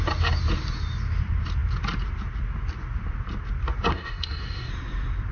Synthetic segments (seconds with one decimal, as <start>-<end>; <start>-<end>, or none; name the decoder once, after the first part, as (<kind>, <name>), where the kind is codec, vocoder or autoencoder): 3.9-4.7 (codec, SNAC)